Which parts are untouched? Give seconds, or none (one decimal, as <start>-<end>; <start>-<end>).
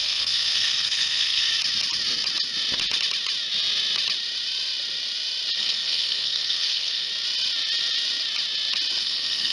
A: 1.5-5.6; 7.1-9.0